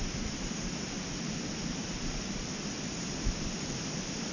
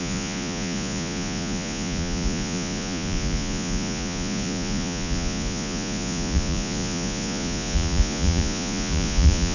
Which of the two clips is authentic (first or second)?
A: first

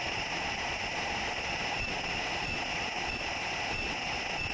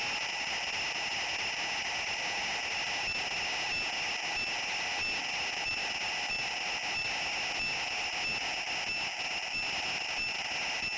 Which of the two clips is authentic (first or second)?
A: second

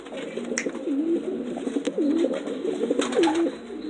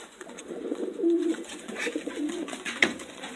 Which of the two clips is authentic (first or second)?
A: first